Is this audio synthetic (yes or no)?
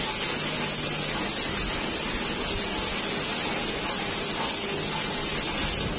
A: no